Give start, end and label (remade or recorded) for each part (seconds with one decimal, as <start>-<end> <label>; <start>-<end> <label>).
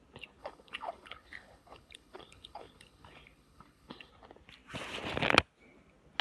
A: 0.0-0.4 recorded; 0.4-4.1 remade; 4.1-6.2 recorded